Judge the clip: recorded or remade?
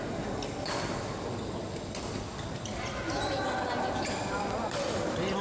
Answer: recorded